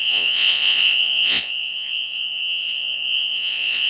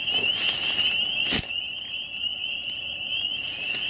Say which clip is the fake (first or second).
first